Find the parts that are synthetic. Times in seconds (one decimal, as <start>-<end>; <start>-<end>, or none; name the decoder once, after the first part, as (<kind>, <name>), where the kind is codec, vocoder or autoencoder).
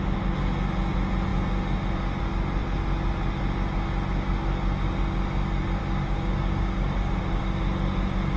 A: 5.8-7.4 (codec, DAC)